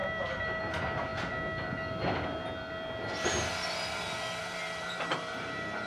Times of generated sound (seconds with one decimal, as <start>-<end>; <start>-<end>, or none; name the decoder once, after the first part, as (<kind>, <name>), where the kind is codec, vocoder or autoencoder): 0.0-1.1 (vocoder, BigVGAN v2); 4.4-5.9